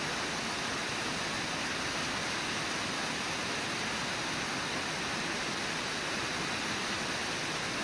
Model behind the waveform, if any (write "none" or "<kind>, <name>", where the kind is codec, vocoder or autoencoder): none